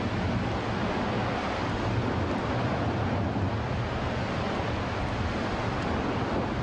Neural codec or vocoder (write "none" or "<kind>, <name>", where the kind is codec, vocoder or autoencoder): none